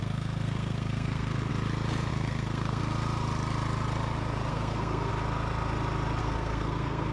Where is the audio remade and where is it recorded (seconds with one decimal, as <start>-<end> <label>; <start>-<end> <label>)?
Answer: 0.0-1.5 remade; 1.5-2.1 recorded; 2.1-2.8 remade; 2.8-4.5 recorded; 4.5-5.1 remade; 5.1-6.2 recorded; 6.2-7.1 remade